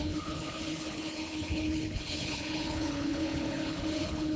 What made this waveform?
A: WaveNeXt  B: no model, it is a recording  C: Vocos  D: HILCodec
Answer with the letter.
D